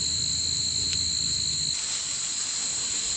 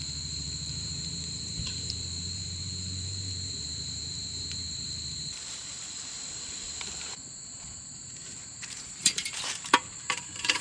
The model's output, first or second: second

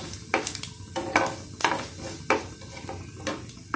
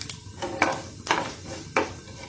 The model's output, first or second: second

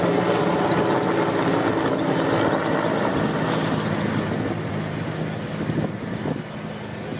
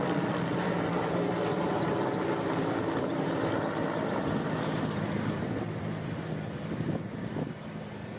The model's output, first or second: second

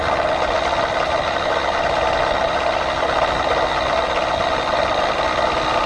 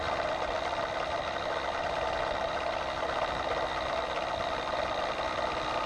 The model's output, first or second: second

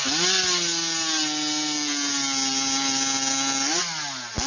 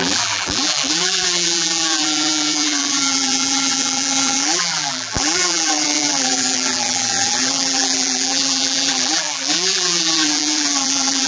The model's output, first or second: second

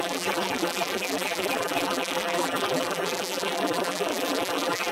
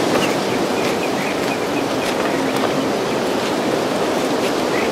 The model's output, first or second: first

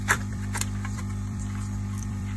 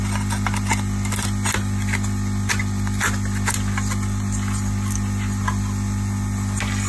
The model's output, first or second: first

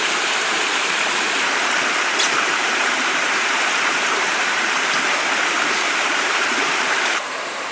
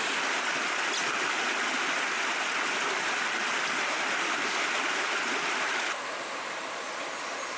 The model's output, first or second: first